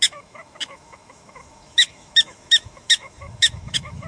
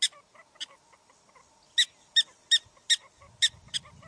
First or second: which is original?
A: second